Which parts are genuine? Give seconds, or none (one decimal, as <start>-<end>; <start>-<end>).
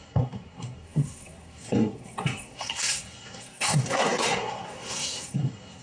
none